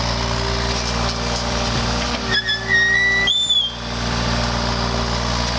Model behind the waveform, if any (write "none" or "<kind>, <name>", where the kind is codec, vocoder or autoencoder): none